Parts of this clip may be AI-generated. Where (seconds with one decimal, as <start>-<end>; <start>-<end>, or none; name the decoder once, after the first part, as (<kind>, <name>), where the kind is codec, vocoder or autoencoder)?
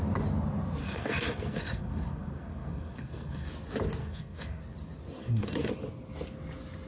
0.8-3.5 (codec, SNAC); 4.0-4.6; 5.2-5.7